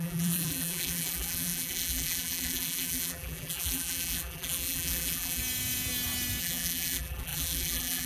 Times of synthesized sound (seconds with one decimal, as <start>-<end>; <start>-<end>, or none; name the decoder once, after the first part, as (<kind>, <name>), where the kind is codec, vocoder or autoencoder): 0.0-5.4 (vocoder, BigVGAN v2); 6.4-8.1